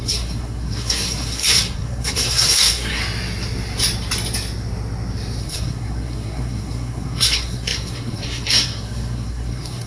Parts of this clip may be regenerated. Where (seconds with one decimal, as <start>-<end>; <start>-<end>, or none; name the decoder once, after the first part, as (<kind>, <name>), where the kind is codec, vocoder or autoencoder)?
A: 0.0-3.0 (codec, SNAC); 5.4-9.9